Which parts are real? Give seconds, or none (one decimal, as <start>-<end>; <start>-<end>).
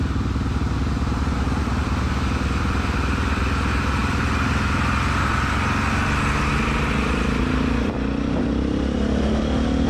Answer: 0.0-9.9